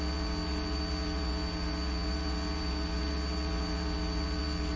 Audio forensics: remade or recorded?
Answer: remade